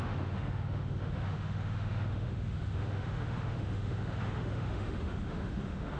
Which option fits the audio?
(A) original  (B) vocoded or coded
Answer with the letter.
B